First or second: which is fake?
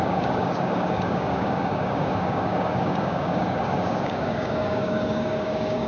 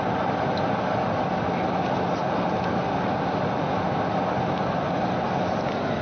first